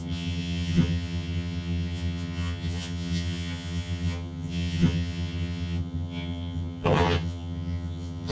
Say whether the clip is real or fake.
fake